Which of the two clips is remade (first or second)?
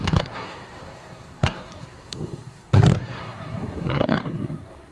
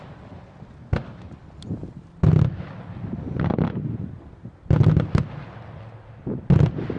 first